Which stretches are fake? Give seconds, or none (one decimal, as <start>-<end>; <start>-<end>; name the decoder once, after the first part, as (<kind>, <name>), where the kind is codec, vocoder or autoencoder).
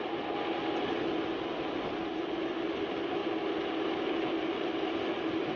none